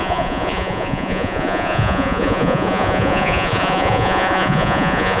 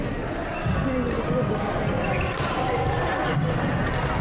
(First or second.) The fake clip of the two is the first